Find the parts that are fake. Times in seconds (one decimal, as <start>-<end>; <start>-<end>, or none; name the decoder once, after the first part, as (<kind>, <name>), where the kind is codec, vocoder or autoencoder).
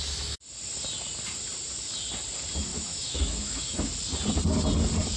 2.7-3.8 (autoencoder, DAC-VAE)